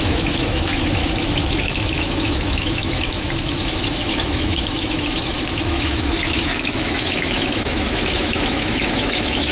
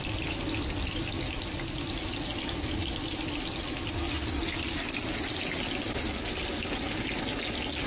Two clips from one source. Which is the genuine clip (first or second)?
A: second